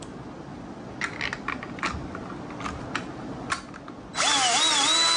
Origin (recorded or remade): recorded